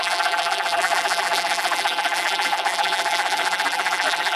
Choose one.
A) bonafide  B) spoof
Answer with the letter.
B